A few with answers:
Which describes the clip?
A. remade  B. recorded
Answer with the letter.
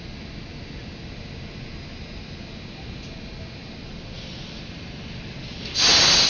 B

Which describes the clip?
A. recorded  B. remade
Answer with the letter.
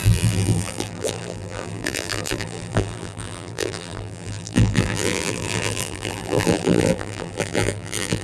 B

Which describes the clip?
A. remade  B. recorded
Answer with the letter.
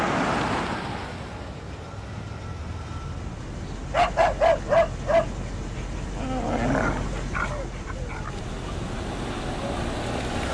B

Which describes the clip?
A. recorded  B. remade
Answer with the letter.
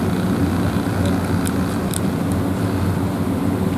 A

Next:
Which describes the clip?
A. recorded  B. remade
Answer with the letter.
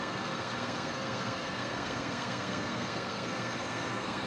B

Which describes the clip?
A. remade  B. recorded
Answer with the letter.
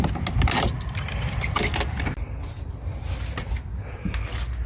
B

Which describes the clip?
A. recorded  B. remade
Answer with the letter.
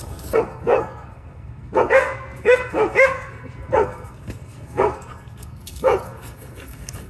B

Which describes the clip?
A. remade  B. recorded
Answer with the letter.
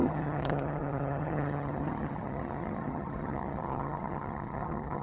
A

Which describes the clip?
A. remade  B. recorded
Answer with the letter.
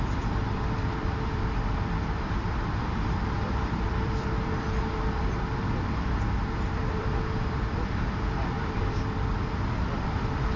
A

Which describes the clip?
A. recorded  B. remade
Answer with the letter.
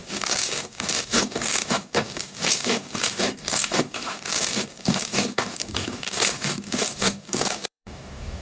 B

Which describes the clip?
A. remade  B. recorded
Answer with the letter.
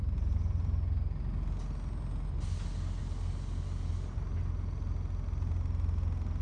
B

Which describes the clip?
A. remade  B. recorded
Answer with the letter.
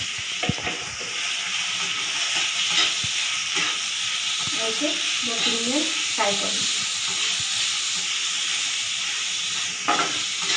B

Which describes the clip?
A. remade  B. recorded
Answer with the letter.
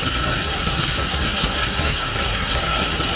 A